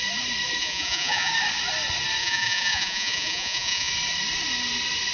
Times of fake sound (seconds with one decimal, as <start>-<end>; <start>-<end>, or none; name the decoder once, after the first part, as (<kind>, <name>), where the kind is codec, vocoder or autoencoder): 0.6-1.3 (vocoder, Vocos); 2.2-3.9